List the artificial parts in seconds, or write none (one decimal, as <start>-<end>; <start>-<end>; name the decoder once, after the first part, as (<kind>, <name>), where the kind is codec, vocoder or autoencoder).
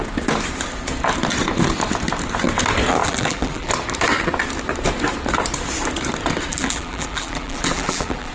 3.0-3.7 (vocoder, BigVGAN v2); 6.5-8.3